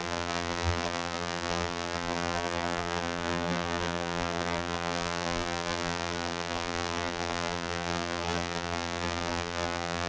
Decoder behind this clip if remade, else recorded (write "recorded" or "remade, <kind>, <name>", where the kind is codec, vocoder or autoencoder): remade, vocoder, BigVGAN v2